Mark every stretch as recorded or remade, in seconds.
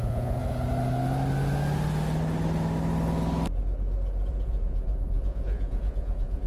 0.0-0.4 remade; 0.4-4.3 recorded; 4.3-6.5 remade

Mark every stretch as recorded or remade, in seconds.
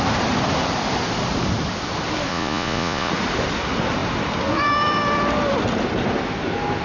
0.0-2.3 recorded; 2.3-3.1 remade; 3.1-6.8 recorded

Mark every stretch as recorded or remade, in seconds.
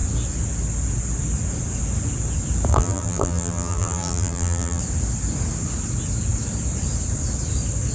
0.0-2.7 recorded; 2.7-4.8 remade; 4.8-7.9 recorded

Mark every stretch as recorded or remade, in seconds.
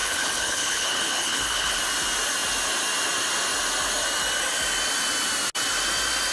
0.0-1.8 remade; 1.8-6.3 recorded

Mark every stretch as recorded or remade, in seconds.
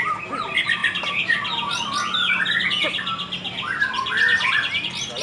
0.0-5.2 recorded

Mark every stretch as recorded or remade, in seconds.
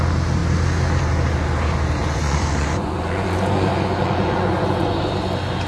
0.0-2.0 recorded; 2.0-5.1 remade; 5.1-5.7 recorded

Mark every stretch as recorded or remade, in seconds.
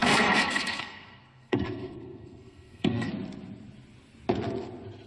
0.0-3.1 remade; 3.1-5.1 recorded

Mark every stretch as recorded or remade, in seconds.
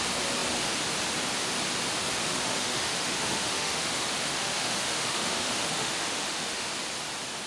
0.0-2.2 recorded; 2.2-6.7 remade; 6.7-7.5 recorded